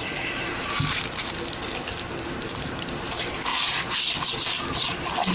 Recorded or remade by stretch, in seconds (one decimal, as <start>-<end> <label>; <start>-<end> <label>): 0.0-0.5 remade; 0.5-2.4 recorded; 2.4-3.5 remade; 3.5-5.3 recorded